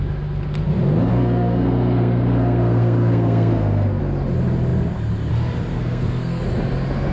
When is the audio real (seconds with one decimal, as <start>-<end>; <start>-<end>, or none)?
0.0-1.1; 4.0-5.7; 6.4-7.1